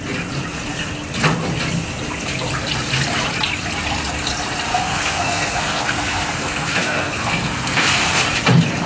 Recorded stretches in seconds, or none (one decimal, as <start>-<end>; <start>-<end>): 0.0-4.7; 8.2-8.9